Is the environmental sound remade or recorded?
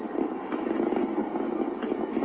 recorded